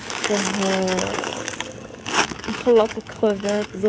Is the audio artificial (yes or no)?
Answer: yes